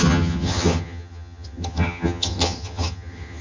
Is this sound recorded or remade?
remade